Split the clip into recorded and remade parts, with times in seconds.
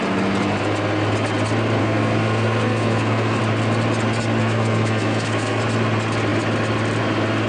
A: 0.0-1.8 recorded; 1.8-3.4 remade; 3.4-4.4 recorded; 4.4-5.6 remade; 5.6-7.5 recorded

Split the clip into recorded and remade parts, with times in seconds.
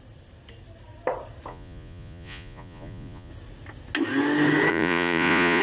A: 0.0-1.5 recorded; 1.5-3.3 remade; 3.3-4.7 recorded; 4.7-5.6 remade